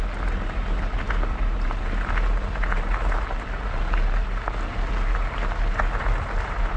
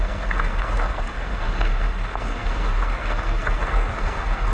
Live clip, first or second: first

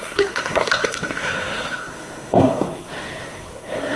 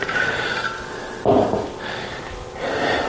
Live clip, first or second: second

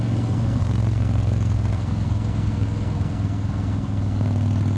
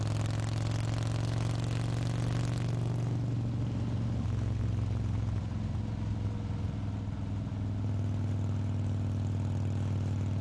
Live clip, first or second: second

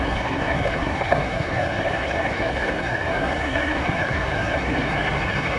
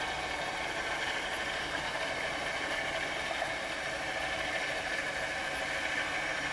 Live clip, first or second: second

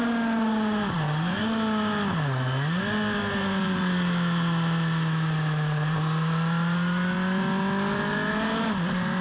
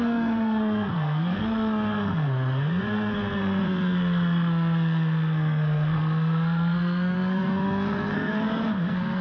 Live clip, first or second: first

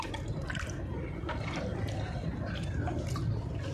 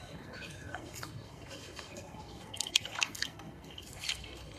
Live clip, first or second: first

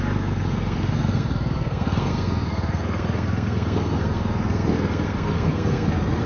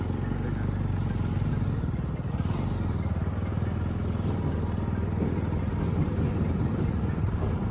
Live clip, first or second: second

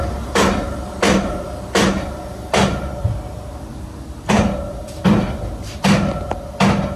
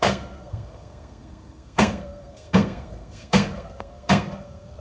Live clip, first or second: first